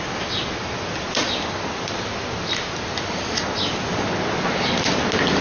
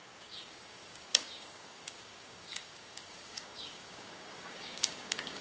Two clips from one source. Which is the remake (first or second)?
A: second